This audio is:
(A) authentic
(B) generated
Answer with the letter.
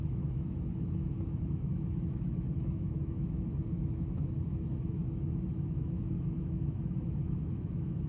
B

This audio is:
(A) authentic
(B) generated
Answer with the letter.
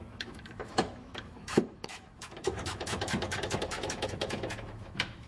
B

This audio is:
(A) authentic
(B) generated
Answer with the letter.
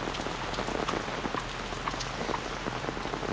A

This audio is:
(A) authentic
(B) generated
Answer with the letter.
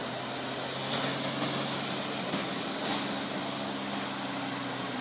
A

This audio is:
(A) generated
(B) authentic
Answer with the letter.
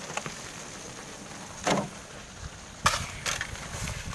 B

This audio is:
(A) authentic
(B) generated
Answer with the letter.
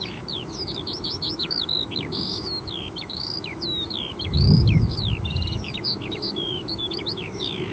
B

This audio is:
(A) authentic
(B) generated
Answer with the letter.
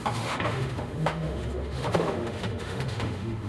B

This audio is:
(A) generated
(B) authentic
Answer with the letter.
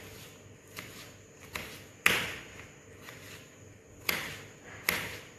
B